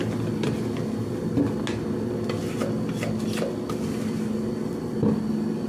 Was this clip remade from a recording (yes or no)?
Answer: no